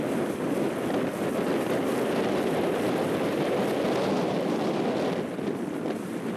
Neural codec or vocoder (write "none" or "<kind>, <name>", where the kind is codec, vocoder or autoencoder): none